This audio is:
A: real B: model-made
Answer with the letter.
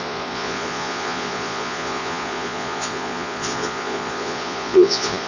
B